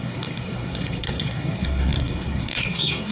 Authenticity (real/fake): fake